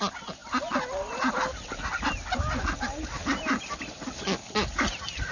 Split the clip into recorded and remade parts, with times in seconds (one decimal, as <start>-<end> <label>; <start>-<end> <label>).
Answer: 0.0-5.3 recorded